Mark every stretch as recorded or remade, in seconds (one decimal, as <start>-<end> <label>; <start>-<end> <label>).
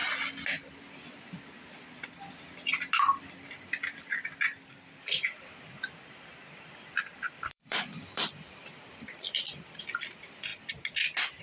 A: 0.0-3.2 recorded; 3.2-10.5 remade; 10.5-11.4 recorded